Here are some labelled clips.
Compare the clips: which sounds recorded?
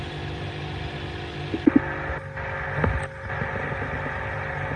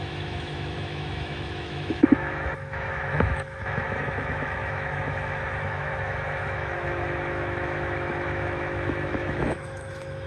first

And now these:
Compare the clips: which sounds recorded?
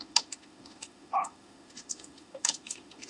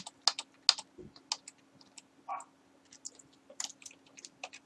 second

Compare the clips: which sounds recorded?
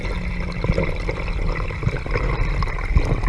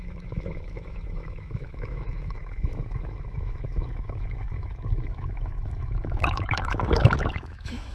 first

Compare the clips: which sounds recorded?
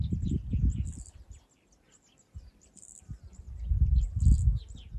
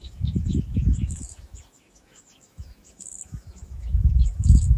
first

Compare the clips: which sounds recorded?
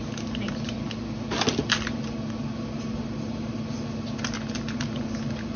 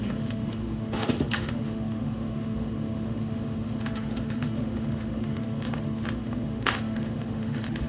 first